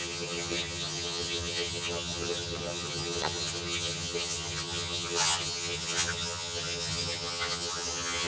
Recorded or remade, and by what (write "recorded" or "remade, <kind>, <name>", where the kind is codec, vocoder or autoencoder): remade, vocoder, HiFi-GAN